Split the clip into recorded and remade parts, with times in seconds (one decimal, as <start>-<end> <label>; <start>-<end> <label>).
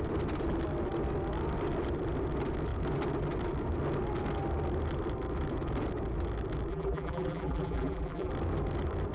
0.0-6.7 recorded; 6.7-8.3 remade; 8.3-9.1 recorded